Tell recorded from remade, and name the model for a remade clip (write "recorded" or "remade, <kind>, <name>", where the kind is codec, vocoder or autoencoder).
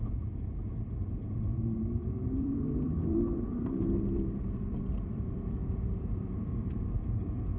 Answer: remade, vocoder, BigVGAN v2